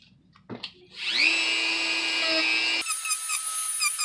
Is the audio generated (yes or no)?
no